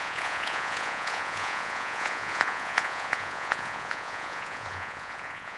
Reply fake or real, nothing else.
fake